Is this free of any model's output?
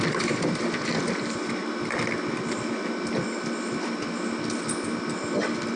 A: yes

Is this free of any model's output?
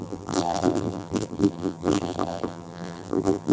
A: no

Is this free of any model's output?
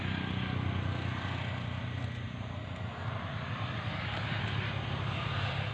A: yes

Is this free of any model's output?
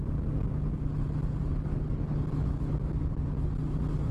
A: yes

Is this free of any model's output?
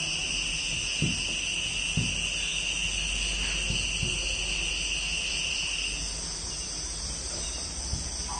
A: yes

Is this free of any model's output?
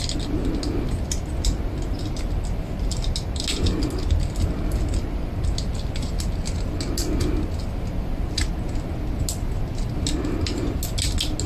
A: yes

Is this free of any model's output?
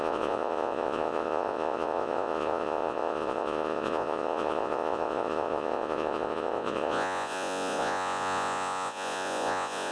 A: no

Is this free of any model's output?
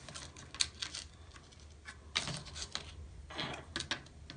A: yes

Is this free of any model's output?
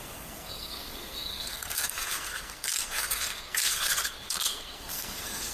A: no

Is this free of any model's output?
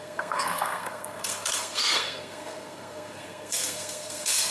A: no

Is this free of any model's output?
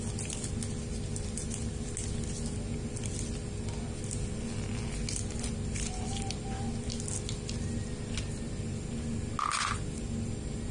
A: yes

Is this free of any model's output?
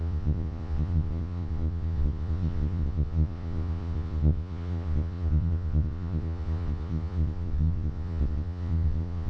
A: no